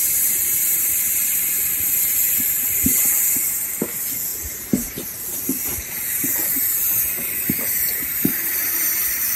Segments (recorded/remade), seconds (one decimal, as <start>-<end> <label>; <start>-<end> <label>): 0.0-4.3 remade; 4.3-7.6 recorded; 7.6-9.4 remade